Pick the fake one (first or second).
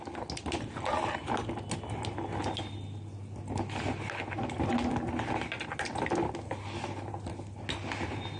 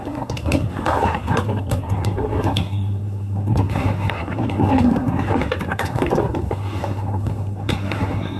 second